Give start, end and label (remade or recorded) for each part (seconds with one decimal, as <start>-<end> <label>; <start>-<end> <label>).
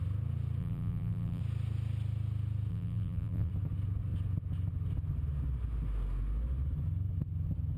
0.0-0.6 recorded; 0.6-1.4 remade; 1.4-2.7 recorded; 2.7-3.5 remade; 3.5-7.8 recorded